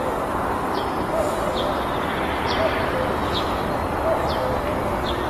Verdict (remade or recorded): recorded